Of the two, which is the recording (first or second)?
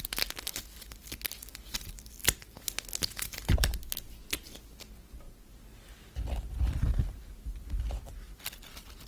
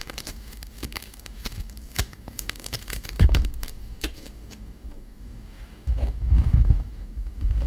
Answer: first